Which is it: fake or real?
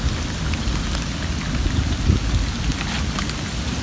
real